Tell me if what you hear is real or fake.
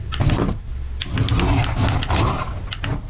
real